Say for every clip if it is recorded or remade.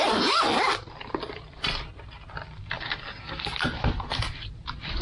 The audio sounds remade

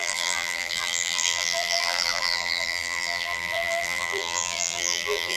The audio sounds remade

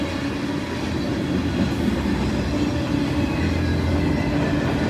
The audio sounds recorded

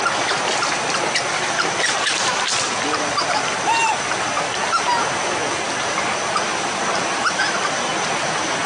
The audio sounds remade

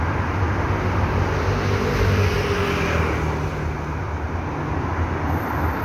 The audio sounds recorded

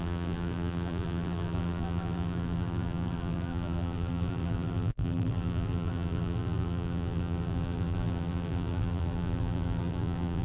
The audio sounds remade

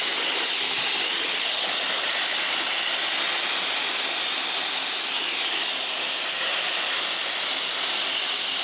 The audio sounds recorded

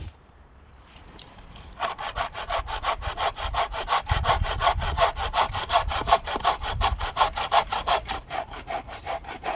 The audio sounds remade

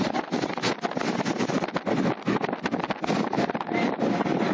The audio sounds recorded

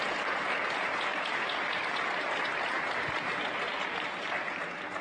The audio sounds remade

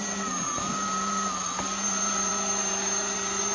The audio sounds remade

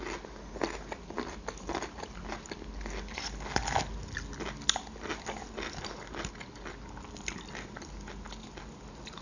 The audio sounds recorded